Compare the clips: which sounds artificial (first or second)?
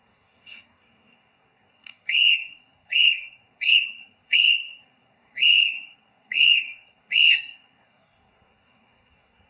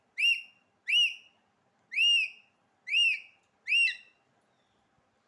first